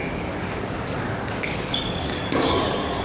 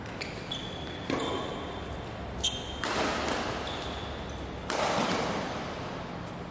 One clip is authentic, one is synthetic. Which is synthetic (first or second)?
first